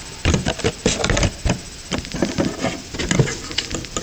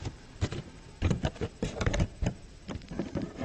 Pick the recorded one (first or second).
first